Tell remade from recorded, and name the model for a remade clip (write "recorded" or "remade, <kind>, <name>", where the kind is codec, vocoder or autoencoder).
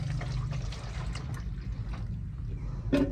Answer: recorded